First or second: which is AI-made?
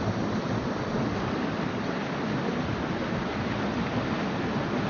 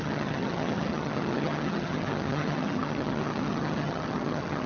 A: second